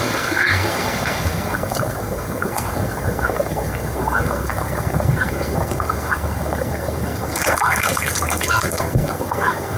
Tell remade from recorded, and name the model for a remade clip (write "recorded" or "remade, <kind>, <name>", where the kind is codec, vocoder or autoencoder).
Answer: remade, codec, SNAC